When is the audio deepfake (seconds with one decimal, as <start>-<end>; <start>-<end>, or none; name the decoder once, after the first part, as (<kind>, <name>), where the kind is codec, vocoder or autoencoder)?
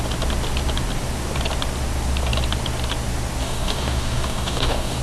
3.4-5.0 (codec, DAC)